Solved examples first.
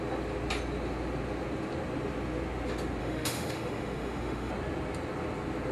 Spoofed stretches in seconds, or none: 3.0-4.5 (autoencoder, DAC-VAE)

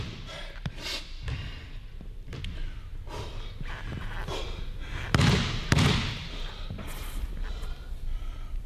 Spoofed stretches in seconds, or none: none